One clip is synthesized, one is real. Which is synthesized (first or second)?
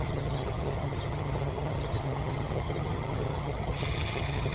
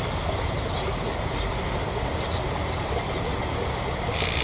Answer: first